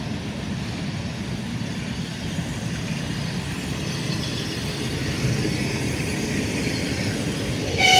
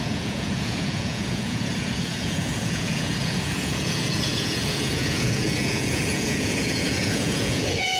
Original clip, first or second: first